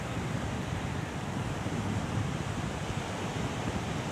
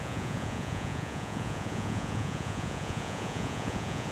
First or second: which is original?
first